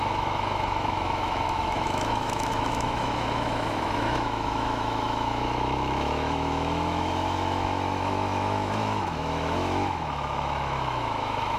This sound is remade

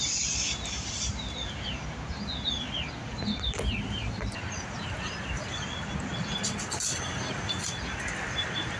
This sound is recorded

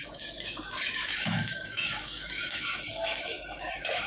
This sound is remade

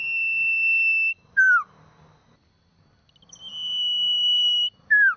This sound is recorded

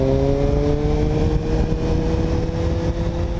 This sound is recorded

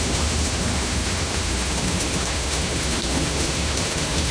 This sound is remade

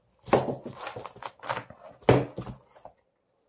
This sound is recorded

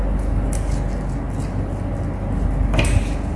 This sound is recorded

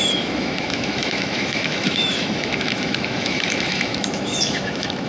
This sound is remade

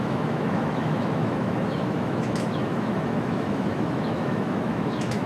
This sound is remade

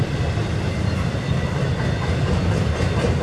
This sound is recorded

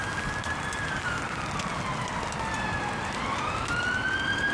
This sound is recorded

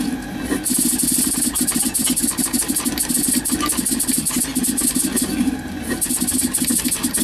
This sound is recorded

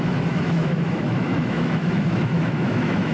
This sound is remade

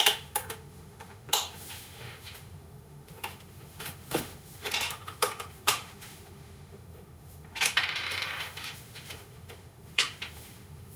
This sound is remade